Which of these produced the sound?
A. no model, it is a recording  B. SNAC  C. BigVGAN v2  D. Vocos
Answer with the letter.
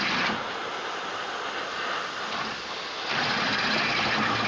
A